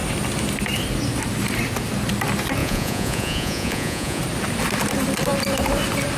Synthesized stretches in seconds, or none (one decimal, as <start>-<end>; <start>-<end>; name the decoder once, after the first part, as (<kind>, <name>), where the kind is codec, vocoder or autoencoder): 2.6-4.2 (vocoder, Vocos)